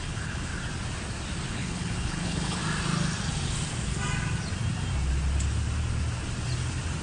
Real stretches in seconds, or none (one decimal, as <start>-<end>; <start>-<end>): 0.5-1.5; 2.6-7.0